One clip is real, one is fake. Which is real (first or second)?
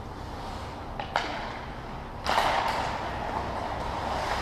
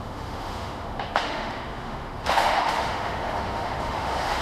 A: first